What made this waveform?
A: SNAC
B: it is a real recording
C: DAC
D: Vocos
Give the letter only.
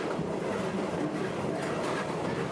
B